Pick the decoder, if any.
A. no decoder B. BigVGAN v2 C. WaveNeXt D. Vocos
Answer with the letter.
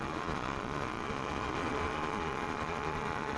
D